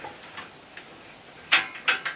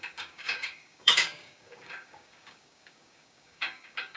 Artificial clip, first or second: second